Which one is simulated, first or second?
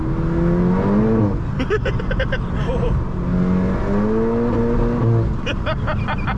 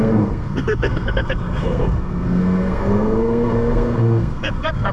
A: second